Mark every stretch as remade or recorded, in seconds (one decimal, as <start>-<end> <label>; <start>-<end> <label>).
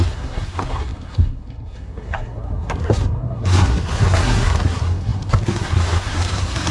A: 0.0-6.7 remade